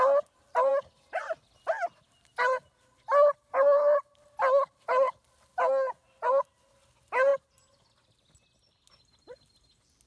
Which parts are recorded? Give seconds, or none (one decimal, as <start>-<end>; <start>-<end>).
0.0-10.1